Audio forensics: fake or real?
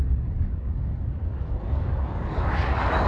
fake